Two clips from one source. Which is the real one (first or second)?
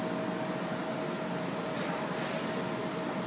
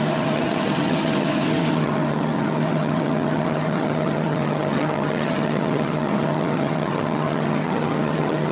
first